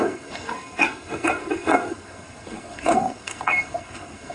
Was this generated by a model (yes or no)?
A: yes